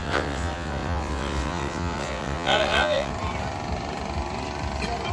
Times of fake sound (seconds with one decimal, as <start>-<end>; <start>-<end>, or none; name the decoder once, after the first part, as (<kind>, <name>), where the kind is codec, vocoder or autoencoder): 0.0-3.1 (vocoder, WaveNeXt)